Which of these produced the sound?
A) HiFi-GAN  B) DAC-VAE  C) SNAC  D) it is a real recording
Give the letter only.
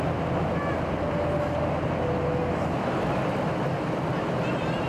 D